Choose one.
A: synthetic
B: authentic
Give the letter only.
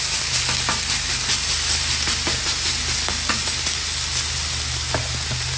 B